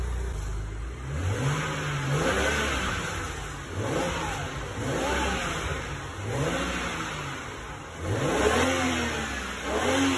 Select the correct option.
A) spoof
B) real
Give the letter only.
B